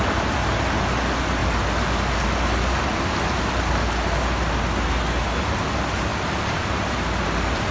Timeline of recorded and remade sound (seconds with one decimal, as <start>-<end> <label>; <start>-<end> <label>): 0.0-6.1 recorded; 6.1-7.7 remade